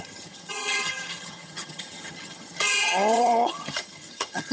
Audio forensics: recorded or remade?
remade